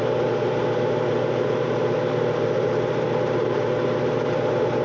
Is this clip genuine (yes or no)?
no